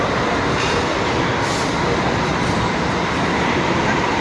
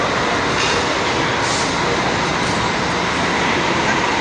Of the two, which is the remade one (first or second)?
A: first